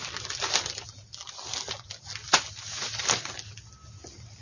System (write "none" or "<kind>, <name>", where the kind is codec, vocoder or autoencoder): none